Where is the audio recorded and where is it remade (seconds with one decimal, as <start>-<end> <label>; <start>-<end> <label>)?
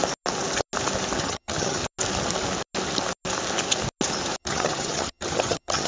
0.0-1.2 recorded; 1.2-1.8 remade; 1.8-4.4 recorded; 4.4-5.9 remade